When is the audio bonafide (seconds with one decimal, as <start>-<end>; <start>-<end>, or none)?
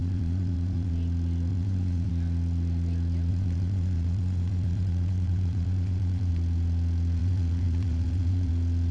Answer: 0.9-1.5; 2.1-3.3; 6.3-7.2; 8.5-8.9